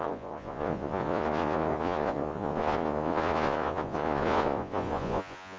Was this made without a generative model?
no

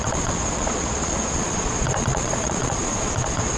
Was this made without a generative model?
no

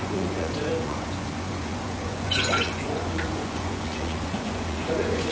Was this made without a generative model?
no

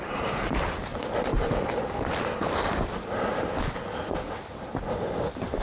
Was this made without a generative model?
yes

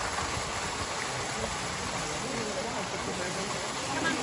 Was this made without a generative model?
yes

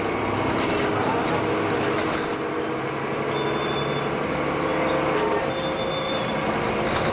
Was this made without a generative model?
yes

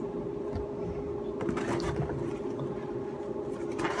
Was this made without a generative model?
yes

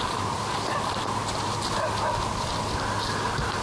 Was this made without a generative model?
yes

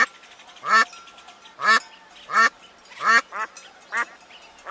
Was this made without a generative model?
yes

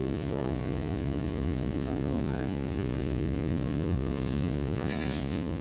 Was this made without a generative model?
no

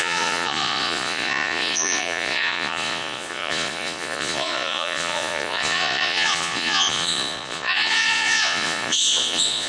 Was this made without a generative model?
no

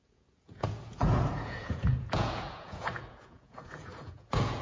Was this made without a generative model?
no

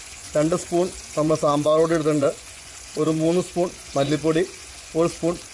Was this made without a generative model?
no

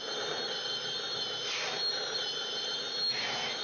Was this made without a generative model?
yes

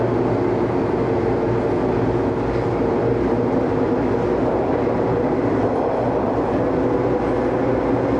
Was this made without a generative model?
yes